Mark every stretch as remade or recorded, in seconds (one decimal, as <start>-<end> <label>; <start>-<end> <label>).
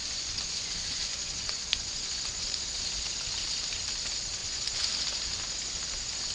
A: 0.0-2.9 remade; 2.9-4.4 recorded; 4.4-4.9 remade; 4.9-6.3 recorded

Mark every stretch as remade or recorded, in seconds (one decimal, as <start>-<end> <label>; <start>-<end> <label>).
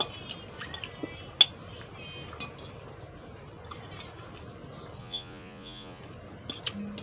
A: 0.0-5.0 recorded; 5.0-6.0 remade; 6.0-7.0 recorded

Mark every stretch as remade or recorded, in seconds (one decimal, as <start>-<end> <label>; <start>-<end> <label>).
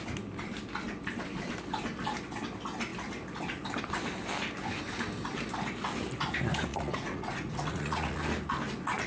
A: 0.0-6.7 recorded; 6.7-8.2 remade; 8.2-9.1 recorded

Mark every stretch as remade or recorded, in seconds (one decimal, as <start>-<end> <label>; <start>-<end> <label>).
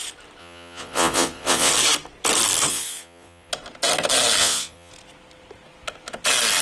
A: 0.0-0.4 recorded; 0.4-1.7 remade; 1.7-2.7 recorded; 2.7-3.5 remade; 3.5-4.4 recorded; 4.4-4.9 remade; 4.9-6.6 recorded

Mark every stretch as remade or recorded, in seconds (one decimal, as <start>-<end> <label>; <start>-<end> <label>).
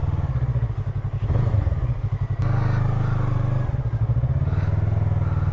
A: 0.0-5.5 recorded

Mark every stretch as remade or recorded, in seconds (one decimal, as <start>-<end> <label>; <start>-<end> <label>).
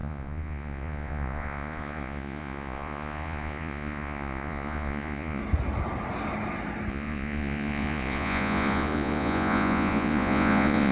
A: 0.0-5.4 remade; 5.4-6.9 recorded; 6.9-10.9 remade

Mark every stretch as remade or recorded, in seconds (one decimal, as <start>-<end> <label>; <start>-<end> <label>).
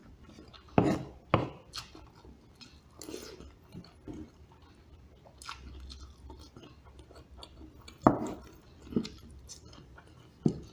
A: 0.0-10.7 recorded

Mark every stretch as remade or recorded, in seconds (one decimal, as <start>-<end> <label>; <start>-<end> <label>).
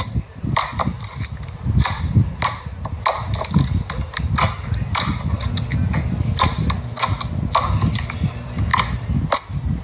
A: 0.0-9.8 recorded